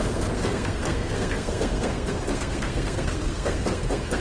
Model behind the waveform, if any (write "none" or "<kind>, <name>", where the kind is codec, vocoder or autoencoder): codec, SNAC